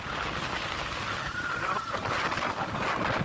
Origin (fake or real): real